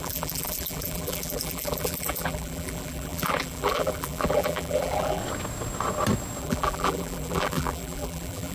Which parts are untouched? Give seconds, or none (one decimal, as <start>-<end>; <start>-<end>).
5.2-6.4